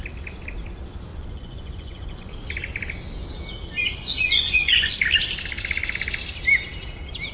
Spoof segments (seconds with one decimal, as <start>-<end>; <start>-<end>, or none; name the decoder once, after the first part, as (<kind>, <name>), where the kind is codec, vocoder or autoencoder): 1.1-2.3 (vocoder, Vocos); 3.8-4.9